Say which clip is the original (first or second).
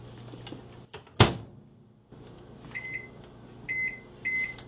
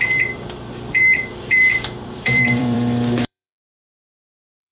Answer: first